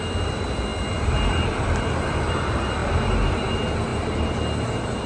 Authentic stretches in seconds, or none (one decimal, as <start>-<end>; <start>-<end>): 0.0-5.1